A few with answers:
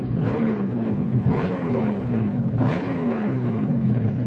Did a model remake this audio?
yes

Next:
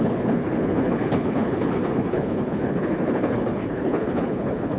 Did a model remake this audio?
yes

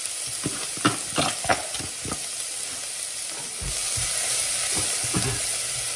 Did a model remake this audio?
no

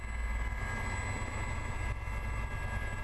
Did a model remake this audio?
no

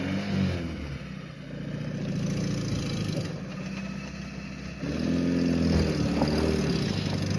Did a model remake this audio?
no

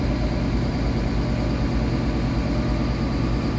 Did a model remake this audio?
no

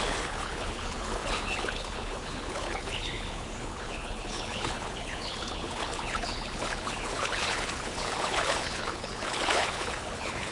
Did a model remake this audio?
yes